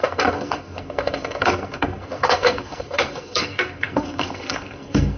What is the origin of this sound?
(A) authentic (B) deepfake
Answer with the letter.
B